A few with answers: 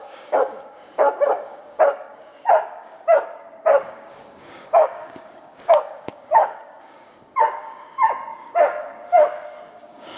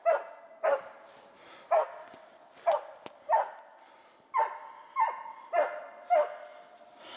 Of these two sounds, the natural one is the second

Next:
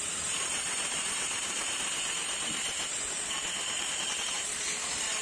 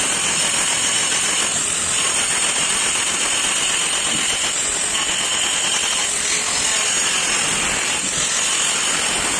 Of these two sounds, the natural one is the second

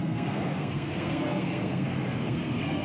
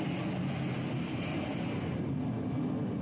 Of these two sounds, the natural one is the second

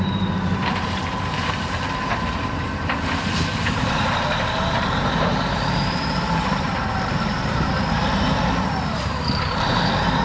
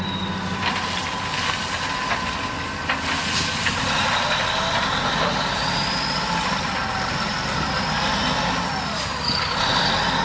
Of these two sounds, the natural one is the second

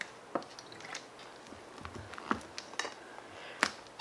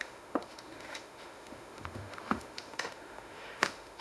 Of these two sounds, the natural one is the first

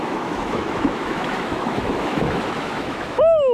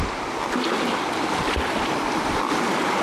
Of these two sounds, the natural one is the second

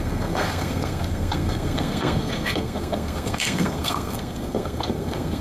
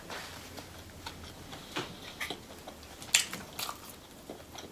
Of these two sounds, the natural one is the second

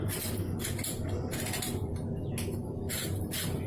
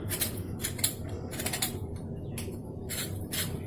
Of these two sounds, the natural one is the first